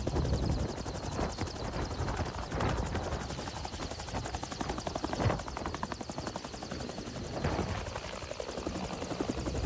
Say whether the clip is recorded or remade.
recorded